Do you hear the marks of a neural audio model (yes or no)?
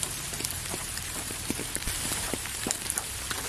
yes